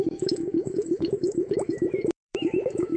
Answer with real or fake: fake